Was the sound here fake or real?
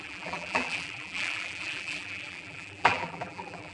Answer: fake